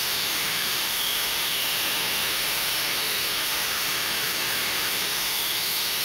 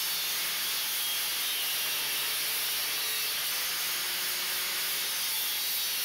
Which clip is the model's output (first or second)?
first